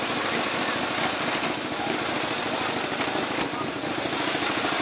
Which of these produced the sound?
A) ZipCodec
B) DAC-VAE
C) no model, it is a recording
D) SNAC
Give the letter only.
C